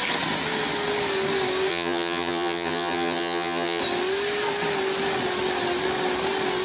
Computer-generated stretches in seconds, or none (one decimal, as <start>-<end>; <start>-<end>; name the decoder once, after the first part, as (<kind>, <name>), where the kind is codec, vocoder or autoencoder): 1.7-3.8 (vocoder, HiFi-GAN)

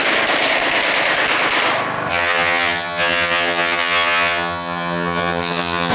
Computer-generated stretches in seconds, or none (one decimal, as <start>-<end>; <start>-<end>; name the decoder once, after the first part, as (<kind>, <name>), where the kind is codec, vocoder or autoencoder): 2.1-5.9 (vocoder, HiFi-GAN)

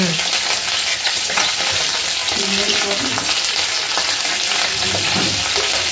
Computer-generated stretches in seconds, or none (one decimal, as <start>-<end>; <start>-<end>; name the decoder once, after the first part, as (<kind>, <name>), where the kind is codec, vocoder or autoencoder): 0.9-1.6 (vocoder, HiFi-GAN)

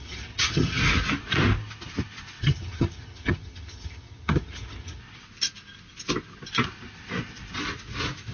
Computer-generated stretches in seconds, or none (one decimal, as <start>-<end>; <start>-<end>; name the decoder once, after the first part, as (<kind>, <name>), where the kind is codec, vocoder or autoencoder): 0.0-0.8 (vocoder, HiFi-GAN); 2.4-5.0

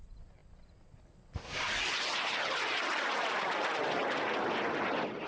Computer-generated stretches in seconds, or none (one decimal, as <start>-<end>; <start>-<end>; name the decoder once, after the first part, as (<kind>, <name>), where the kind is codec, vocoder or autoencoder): none

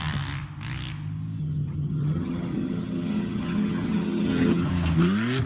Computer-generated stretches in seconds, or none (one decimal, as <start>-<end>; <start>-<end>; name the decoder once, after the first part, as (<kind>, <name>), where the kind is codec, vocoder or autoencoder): 1.4-4.7 (vocoder, HiFi-GAN)

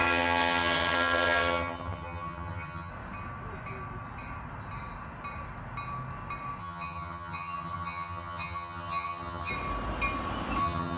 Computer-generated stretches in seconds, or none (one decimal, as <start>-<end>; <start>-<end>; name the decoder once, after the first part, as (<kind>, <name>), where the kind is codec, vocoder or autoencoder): 0.0-2.9 (vocoder, HiFi-GAN); 6.6-9.5; 10.6-11.0